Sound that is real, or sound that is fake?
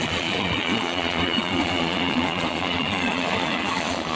fake